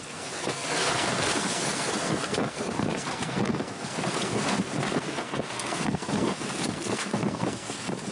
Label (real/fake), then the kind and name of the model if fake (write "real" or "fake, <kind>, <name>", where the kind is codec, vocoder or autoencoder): fake, codec, SNAC